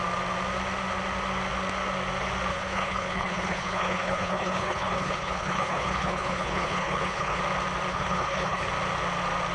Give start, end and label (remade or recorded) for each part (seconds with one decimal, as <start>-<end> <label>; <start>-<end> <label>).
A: 0.0-2.5 recorded; 2.5-7.4 remade; 7.4-7.9 recorded; 7.9-8.7 remade; 8.7-9.5 recorded